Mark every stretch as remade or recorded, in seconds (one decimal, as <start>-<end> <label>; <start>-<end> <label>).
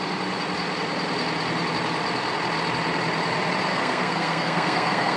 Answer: 0.0-3.7 recorded; 3.7-5.2 remade